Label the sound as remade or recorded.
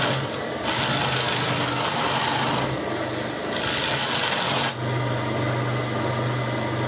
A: recorded